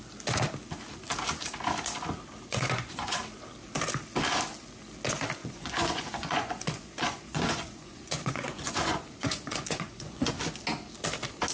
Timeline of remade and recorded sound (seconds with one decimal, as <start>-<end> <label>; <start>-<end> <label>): 0.0-2.5 recorded; 2.5-3.2 remade; 3.2-5.4 recorded; 5.4-10.3 remade; 10.3-11.5 recorded